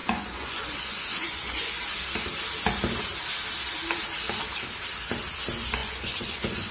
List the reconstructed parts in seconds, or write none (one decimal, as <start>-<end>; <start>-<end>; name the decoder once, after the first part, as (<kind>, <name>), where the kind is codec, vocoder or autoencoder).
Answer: 0.0-1.8 (vocoder, Vocos); 5.8-6.7